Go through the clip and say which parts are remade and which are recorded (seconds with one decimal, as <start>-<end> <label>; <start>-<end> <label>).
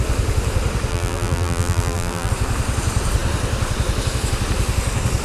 0.0-0.9 recorded; 0.9-2.3 remade; 2.3-5.2 recorded